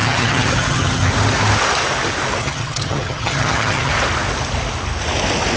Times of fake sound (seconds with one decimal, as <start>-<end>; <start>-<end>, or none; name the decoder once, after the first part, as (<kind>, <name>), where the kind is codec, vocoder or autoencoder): 0.0-1.1 (vocoder, HiFi-GAN); 2.4-3.9